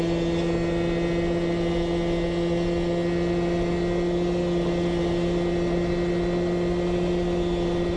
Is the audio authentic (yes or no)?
yes